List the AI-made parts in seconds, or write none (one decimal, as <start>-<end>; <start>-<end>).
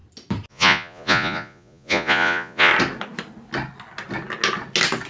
0.5-2.7